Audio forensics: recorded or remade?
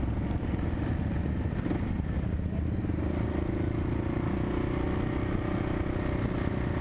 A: recorded